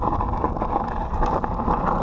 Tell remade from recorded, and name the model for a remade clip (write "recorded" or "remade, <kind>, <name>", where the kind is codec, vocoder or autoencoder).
recorded